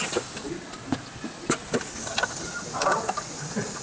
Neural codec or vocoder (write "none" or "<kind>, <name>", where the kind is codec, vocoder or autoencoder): none